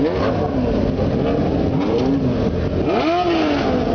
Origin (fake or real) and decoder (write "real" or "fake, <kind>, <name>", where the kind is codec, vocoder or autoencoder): real